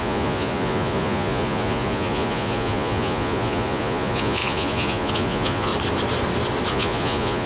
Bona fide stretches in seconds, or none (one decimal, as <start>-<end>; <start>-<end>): 5.7-6.7